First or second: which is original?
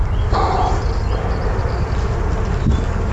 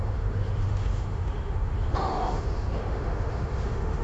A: first